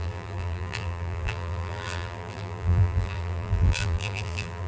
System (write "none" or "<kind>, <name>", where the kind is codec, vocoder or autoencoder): vocoder, BigVGAN v2